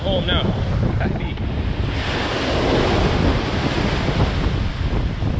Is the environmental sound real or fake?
real